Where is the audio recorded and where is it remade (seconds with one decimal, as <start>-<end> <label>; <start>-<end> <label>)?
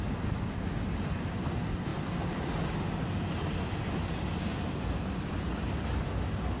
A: 0.0-6.6 recorded